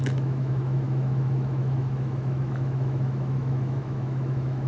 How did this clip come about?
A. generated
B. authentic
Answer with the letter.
A